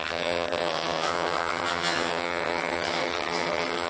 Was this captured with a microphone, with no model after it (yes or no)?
no